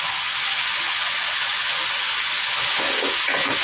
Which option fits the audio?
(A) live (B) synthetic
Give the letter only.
B